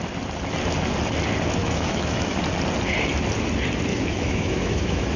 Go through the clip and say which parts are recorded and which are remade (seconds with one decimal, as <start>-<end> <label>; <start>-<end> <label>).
0.0-1.6 recorded; 1.6-2.4 remade; 2.4-3.9 recorded; 3.9-5.2 remade